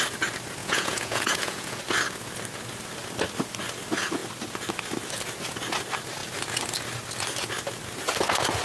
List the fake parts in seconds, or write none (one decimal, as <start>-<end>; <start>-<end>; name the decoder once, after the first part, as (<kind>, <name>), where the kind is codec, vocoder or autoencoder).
0.6-1.8 (vocoder, Vocos)